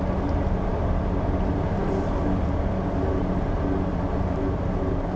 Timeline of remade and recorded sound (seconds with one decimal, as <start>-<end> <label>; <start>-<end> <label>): 0.0-5.2 recorded